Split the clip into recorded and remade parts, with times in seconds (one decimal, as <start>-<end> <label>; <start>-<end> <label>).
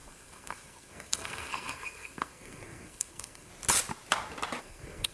0.0-3.5 remade; 3.5-4.6 recorded; 4.6-5.1 remade